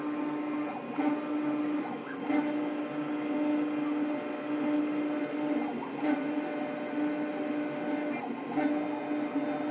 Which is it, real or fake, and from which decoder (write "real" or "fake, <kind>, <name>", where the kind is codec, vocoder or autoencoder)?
real